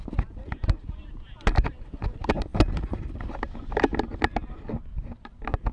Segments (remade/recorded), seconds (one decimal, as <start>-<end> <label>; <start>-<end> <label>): 0.0-5.7 recorded